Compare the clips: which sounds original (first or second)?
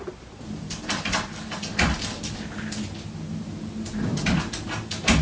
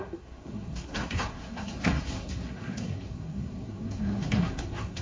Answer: first